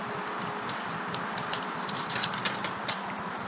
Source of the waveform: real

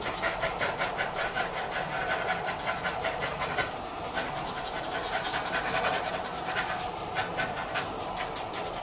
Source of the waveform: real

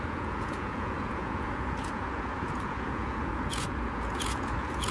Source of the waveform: fake